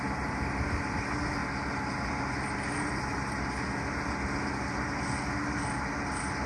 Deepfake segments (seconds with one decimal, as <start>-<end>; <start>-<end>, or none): none